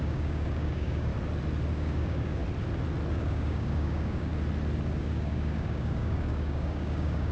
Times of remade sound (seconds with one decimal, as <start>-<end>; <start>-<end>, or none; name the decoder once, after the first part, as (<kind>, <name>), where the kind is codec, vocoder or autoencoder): 0.0-1.1 (codec, DAC); 1.7-2.4; 3.1-4.3; 5.0-7.3